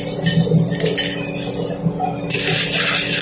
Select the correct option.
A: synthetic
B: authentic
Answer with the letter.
B